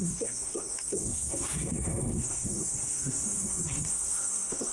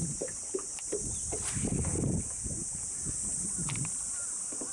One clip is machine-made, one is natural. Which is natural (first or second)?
second